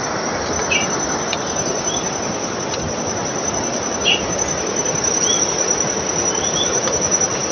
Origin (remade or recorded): recorded